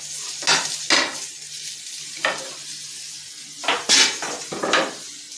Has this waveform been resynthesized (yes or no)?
no